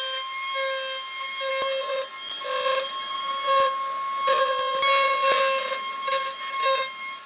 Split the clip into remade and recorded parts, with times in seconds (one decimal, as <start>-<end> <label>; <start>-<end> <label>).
0.0-7.3 recorded